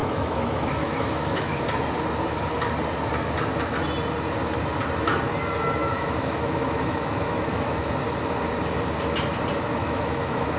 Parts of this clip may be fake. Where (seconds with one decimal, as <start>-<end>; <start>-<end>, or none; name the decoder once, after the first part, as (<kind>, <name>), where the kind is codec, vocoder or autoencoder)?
0.0-1.6 (autoencoder, DAC-VAE); 5.8-7.9; 9.8-10.6